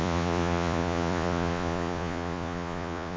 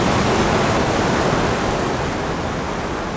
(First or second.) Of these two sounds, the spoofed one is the first